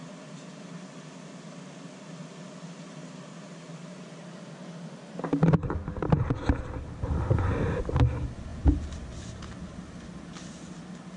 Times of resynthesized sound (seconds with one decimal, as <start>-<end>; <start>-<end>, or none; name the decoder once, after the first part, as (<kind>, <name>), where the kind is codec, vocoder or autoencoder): none